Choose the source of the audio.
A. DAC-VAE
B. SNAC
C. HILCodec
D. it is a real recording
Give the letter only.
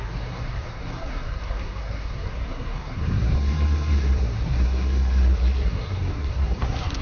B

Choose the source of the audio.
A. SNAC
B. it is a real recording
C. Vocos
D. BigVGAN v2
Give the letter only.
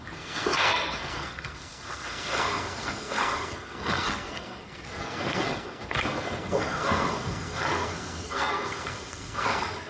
A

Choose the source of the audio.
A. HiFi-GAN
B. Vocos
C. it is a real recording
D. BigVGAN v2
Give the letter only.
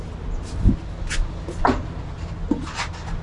C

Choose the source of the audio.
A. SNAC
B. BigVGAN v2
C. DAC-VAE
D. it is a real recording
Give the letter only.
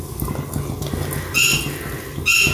D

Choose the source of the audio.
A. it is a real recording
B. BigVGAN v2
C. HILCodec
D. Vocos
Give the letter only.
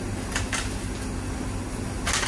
A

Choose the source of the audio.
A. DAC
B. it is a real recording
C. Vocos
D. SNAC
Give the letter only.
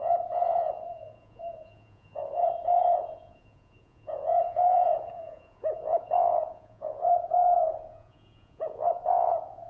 C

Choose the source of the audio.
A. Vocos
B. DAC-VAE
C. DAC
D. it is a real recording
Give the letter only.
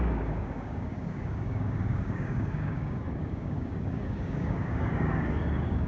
C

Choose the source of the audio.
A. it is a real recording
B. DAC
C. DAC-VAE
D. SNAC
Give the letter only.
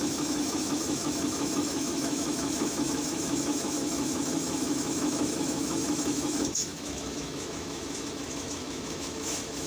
C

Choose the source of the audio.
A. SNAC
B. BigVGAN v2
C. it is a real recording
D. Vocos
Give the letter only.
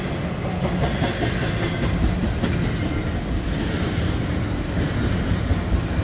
C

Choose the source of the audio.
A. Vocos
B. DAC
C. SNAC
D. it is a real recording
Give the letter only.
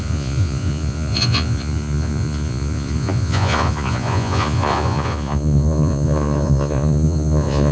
A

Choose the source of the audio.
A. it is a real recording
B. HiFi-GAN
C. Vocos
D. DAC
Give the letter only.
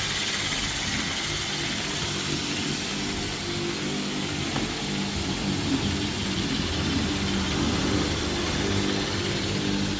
A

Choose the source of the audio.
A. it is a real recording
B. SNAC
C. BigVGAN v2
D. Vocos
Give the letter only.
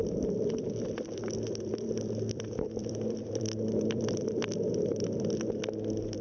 C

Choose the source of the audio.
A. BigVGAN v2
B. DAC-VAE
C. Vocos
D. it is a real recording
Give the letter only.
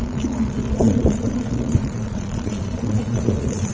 C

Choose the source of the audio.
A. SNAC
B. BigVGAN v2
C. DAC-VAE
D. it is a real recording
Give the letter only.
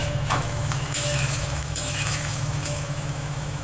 C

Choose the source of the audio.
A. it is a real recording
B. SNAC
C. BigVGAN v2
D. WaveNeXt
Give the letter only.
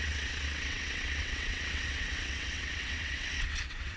D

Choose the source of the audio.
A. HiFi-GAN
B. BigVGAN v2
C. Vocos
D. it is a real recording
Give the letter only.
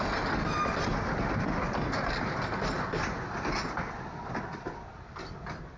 D